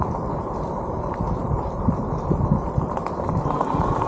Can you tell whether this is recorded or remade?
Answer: remade